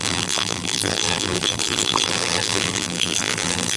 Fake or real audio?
fake